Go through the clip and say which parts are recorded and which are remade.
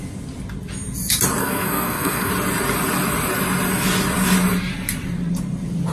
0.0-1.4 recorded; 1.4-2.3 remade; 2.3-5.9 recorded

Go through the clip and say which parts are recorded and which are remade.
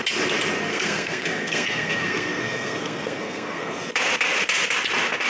0.0-0.7 recorded; 0.7-3.8 remade; 3.8-5.3 recorded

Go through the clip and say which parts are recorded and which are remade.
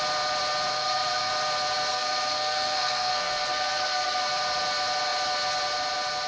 0.0-0.7 recorded; 0.7-1.3 remade; 1.3-1.9 recorded; 1.9-4.2 remade; 4.2-6.3 recorded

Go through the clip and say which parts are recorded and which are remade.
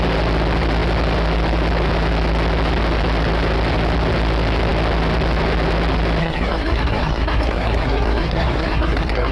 0.0-6.2 recorded; 6.2-9.3 remade